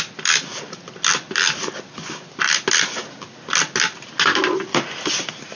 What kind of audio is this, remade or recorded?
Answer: recorded